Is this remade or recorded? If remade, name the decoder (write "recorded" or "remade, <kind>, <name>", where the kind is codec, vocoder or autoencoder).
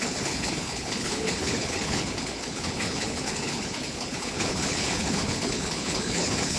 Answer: remade, codec, HILCodec